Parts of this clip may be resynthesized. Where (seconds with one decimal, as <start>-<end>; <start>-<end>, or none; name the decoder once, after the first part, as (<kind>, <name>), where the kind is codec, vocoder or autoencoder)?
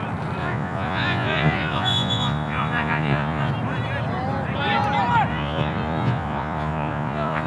0.4-3.5 (vocoder, Vocos); 5.3-7.5